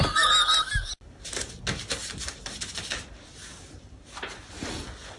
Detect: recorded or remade recorded